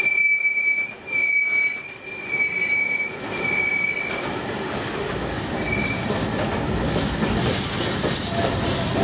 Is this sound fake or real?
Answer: real